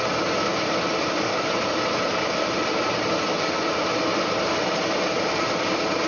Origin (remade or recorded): recorded